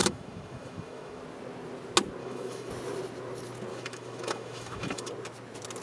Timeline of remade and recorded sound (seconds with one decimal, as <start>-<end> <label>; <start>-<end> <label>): 0.0-1.2 remade; 1.2-2.2 recorded; 2.2-2.7 remade; 2.7-3.7 recorded; 3.7-5.1 remade; 5.1-5.8 recorded